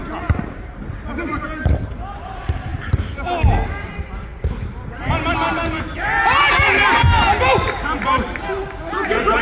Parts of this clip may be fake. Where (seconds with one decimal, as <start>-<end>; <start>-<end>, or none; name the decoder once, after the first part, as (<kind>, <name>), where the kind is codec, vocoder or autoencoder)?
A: none